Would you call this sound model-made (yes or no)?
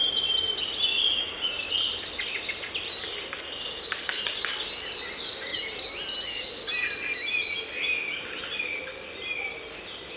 no